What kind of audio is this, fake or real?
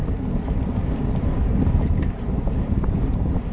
real